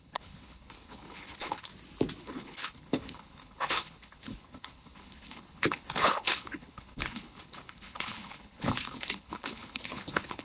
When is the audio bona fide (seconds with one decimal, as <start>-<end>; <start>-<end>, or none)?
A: 1.7-2.2